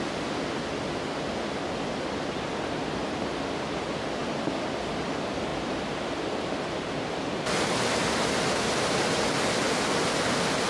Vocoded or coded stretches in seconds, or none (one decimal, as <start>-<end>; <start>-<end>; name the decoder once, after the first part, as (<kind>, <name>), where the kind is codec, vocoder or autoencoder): none